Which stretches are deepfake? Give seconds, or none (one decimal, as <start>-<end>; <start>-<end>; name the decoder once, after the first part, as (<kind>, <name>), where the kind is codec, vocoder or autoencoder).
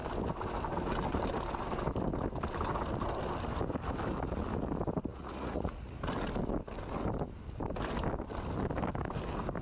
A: 5.1-6.0 (vocoder, Vocos)